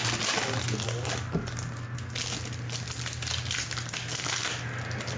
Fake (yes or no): no